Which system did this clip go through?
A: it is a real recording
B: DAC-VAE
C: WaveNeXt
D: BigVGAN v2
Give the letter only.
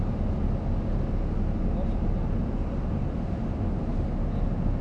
A